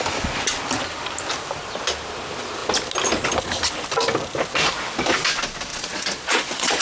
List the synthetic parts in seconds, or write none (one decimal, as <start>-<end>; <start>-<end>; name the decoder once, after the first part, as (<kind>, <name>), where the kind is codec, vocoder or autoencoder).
5.7-6.8 (vocoder, Vocos)